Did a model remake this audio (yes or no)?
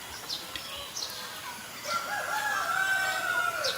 no